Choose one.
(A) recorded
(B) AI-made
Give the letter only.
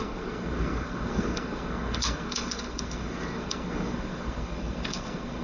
B